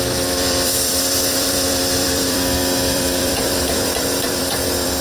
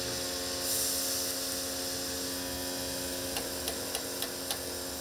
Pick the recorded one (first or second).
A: second